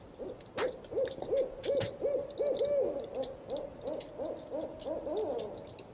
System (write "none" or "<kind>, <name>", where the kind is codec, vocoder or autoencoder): none